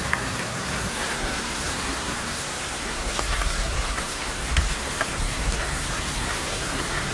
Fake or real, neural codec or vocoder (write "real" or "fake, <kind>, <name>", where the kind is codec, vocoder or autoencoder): fake, codec, SNAC